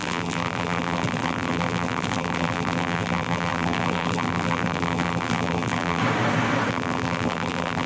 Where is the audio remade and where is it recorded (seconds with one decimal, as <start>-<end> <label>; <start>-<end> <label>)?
0.0-6.0 remade; 6.0-6.7 recorded; 6.7-7.9 remade